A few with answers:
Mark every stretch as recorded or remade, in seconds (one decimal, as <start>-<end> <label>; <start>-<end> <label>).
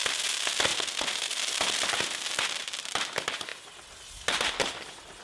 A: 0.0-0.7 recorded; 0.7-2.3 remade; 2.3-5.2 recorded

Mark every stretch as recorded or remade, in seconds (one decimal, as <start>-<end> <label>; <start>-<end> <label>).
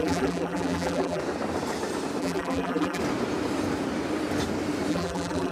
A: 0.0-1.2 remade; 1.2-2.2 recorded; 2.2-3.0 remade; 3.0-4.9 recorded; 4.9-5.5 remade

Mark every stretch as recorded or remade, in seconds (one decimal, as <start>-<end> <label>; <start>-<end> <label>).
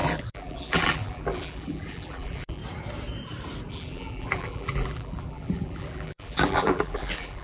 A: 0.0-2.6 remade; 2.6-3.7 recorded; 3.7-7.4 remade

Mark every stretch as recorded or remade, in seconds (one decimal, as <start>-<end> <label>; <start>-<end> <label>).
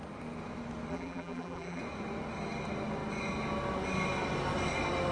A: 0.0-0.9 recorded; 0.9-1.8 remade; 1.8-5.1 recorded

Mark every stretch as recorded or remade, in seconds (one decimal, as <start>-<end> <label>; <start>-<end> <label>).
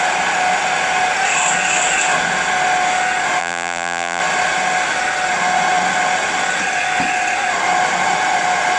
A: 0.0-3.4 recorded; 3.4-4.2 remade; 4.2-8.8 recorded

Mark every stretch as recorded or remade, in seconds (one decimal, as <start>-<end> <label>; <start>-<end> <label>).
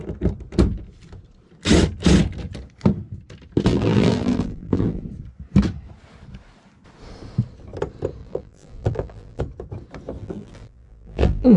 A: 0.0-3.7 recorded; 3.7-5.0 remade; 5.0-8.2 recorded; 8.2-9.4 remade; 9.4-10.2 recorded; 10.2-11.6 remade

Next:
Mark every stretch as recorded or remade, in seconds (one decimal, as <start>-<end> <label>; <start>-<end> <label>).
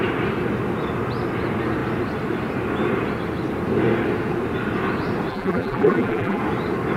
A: 0.0-5.3 recorded; 5.3-6.4 remade; 6.4-7.0 recorded